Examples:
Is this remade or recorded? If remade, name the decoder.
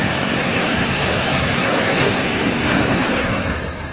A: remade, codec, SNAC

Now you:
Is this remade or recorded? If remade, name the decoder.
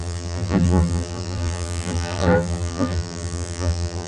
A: remade, vocoder, BigVGAN v2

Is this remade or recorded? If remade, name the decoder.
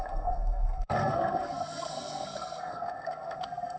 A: remade, codec, SNAC